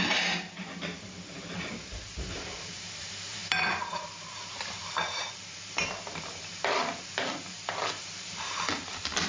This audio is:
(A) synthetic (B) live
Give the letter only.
A